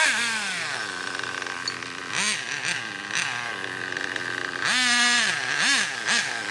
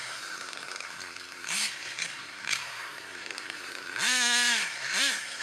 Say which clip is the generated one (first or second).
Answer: second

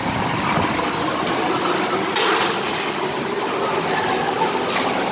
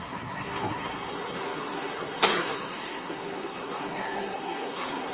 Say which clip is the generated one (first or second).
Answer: second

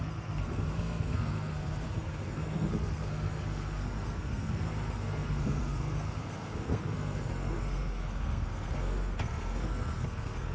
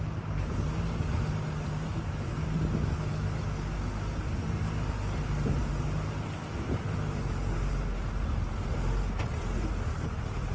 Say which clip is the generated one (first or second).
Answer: first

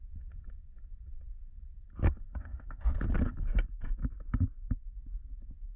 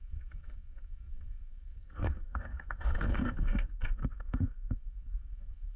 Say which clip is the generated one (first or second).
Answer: second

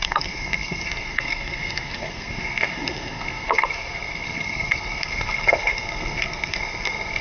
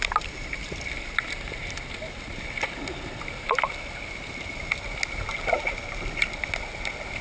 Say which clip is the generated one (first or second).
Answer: first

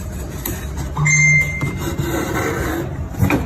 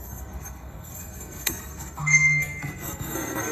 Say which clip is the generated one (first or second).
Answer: second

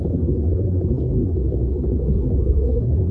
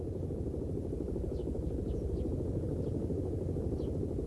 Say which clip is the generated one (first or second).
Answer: first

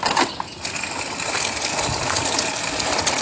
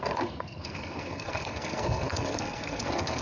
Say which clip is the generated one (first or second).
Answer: second